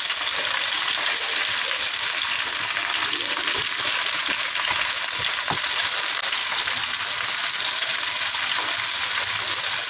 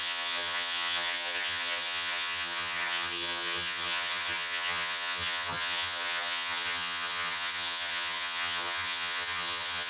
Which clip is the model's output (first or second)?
second